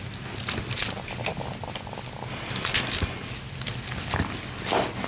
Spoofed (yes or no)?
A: no